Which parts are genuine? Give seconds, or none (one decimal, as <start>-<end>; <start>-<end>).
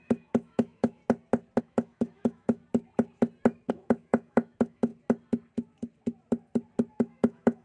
1.0-1.6; 2.6-3.7; 4.9-6.9